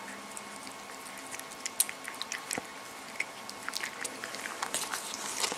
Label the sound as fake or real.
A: real